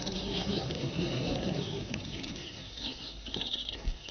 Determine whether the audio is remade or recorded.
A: remade